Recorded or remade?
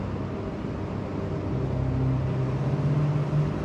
recorded